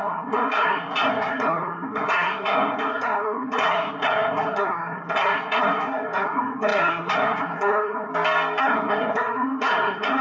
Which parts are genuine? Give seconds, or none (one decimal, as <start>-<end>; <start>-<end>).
8.1-8.6